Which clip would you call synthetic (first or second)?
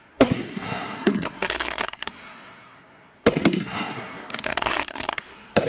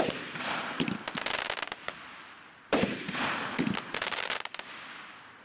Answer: first